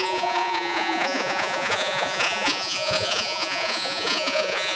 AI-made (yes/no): yes